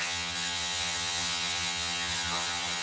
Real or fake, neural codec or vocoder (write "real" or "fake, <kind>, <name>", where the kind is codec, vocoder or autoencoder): fake, vocoder, HiFi-GAN